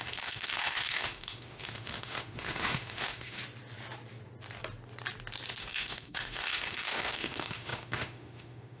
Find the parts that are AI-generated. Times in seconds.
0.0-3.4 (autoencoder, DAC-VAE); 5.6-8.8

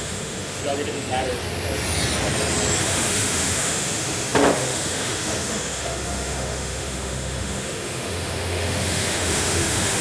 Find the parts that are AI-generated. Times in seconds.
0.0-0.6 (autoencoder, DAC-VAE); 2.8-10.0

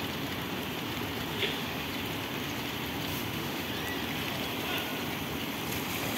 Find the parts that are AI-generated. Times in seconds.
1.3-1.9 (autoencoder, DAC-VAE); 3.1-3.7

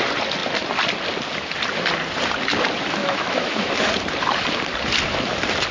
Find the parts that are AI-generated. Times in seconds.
3.0-3.7 (autoencoder, DAC-VAE)

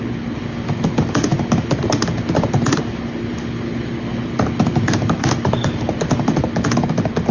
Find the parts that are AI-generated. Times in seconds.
none

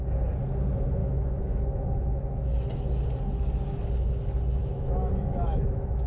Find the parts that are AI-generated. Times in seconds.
1.0-2.2 (autoencoder, DAC-VAE); 4.6-6.1

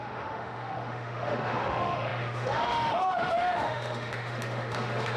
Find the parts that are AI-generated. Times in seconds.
0.0-5.2 (autoencoder, DAC-VAE)